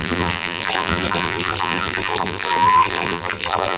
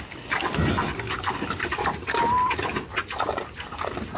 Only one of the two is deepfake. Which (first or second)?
first